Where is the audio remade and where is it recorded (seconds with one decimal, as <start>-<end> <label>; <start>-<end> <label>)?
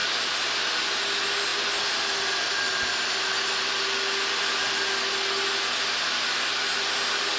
0.0-0.6 remade; 0.6-7.4 recorded